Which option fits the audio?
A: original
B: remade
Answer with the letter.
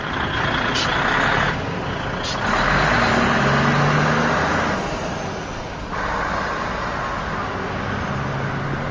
A